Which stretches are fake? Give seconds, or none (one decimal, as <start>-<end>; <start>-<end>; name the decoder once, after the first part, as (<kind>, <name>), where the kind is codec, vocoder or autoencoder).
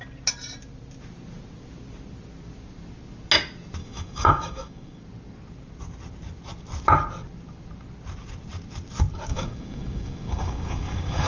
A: 3.8-5.0 (codec, DAC); 9.3-11.3